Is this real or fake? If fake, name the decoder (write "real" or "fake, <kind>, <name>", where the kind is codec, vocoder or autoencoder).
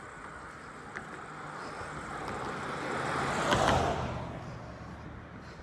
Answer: real